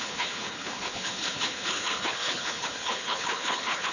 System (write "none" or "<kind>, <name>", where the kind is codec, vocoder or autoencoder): codec, HILCodec